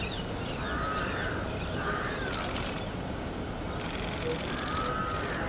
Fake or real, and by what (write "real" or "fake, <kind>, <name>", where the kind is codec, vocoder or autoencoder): real